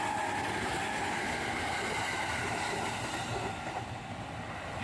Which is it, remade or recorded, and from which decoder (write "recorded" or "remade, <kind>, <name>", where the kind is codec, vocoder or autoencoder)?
recorded